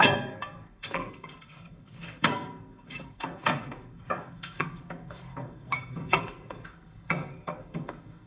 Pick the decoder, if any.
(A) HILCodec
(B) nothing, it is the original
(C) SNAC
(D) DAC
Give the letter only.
C